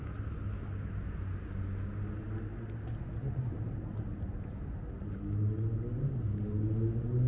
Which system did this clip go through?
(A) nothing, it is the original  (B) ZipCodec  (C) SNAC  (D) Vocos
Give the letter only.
A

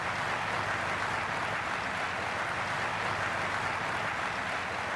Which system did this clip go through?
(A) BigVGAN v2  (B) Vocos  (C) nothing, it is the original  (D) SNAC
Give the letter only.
C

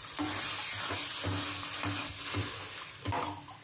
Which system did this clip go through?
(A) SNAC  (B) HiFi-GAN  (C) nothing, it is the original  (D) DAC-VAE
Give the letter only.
C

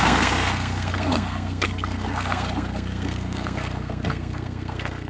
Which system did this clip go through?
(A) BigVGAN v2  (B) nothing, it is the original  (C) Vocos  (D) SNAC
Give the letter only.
D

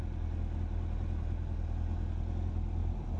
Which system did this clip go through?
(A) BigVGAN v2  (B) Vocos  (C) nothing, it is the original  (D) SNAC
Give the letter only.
C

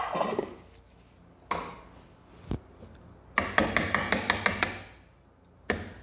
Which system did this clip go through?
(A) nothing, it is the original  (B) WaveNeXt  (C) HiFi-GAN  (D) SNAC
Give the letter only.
A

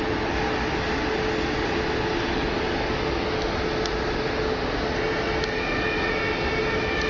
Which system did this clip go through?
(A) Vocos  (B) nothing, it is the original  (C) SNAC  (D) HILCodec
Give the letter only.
B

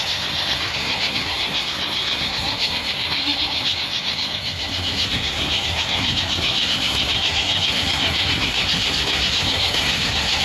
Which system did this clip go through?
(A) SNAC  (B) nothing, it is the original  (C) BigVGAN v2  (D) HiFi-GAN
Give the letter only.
A